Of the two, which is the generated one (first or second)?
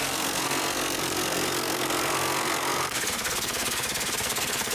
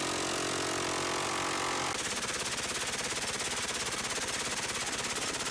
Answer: first